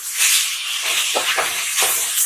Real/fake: fake